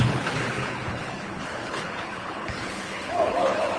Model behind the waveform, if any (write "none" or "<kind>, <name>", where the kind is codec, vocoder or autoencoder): codec, HILCodec